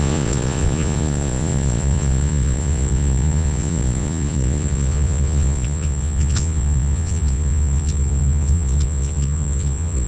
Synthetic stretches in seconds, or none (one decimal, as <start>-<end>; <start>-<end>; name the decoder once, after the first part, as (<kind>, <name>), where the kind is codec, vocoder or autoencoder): 0.0-10.1 (vocoder, Vocos)